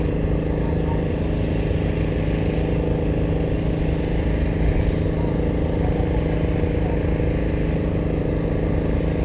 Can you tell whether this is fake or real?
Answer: real